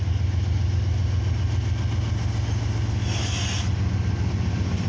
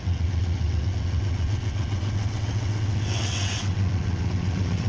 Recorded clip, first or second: first